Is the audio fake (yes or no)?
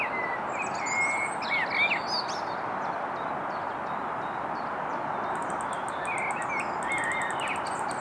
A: no